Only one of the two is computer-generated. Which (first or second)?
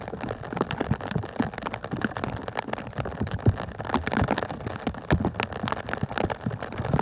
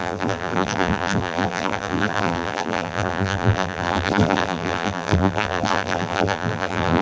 second